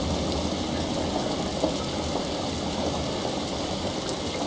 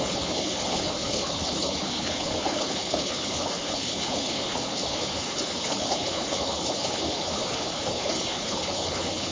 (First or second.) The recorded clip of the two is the first